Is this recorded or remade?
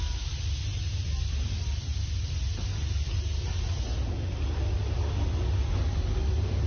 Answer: recorded